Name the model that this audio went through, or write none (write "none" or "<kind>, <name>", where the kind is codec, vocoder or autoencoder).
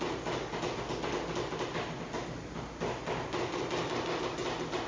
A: none